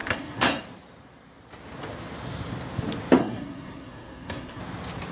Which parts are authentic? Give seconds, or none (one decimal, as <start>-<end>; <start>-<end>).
0.6-3.2; 4.6-5.1